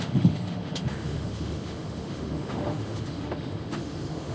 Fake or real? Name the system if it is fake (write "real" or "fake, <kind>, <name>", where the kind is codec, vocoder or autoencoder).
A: fake, autoencoder, DAC-VAE